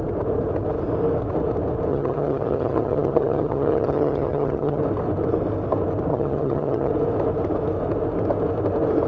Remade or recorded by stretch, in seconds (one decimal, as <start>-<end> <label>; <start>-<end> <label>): 0.0-1.9 recorded; 1.9-4.8 remade; 4.8-6.1 recorded; 6.1-6.9 remade; 6.9-9.1 recorded